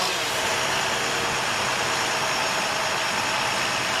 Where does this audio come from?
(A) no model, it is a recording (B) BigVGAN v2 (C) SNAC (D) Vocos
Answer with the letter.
A